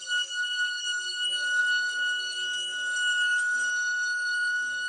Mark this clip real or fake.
fake